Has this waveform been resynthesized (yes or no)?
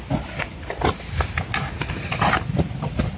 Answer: no